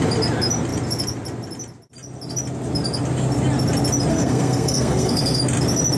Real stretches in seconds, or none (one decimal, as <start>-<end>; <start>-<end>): 0.0-4.1; 5.4-6.0